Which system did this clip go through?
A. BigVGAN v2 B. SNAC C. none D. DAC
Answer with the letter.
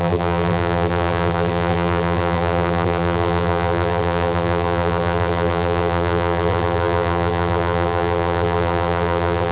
A